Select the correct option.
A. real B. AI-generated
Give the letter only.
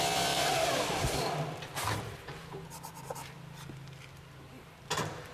A